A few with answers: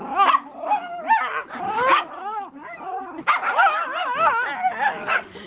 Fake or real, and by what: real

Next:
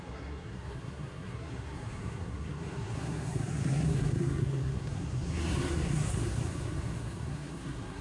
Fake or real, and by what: fake, codec, SNAC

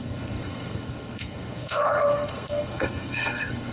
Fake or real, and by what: fake, codec, SNAC